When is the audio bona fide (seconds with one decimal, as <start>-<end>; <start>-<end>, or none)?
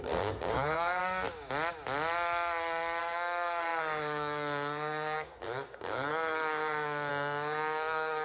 1.0-3.0